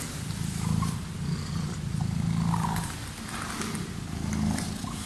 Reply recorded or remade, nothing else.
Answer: recorded